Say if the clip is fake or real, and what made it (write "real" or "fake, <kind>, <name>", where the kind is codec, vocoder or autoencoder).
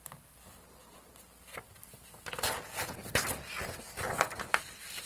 real